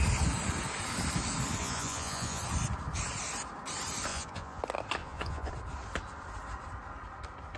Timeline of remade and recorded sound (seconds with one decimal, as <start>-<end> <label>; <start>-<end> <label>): 0.0-1.6 recorded; 1.6-2.4 remade; 2.4-4.1 recorded; 4.1-4.6 remade; 4.6-5.0 recorded; 5.0-5.5 remade; 5.5-7.6 recorded